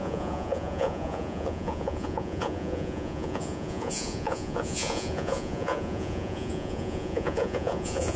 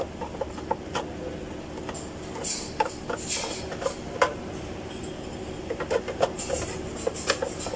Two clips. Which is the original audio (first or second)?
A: second